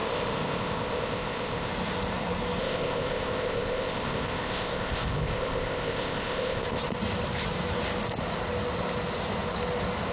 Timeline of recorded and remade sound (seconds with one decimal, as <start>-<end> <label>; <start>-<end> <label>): 0.0-1.7 remade; 1.7-2.6 recorded; 2.6-6.8 remade; 6.8-10.1 recorded